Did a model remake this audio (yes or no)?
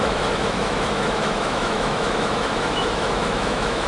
yes